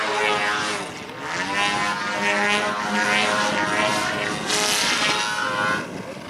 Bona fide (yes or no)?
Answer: yes